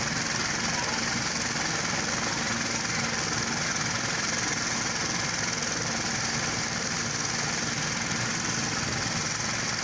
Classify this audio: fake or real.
real